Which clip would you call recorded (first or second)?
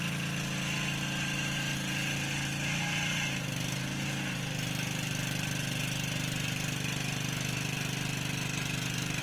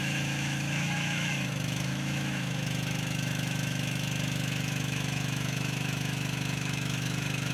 first